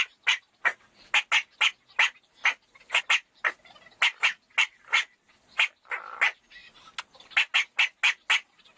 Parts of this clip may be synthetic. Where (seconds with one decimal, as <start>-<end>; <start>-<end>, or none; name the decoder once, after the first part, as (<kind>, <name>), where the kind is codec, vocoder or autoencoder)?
none